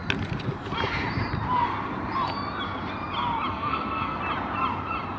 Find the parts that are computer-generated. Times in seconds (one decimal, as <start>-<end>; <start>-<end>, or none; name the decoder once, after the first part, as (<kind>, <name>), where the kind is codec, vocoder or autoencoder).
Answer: 3.5-4.2 (codec, SNAC)